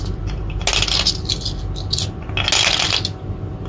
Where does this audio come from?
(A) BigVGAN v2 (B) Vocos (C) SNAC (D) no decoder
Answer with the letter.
D